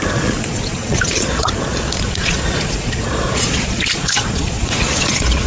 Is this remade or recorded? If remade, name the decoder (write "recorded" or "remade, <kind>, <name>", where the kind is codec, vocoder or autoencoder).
remade, vocoder, Vocos